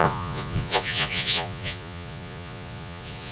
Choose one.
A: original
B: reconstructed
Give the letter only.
B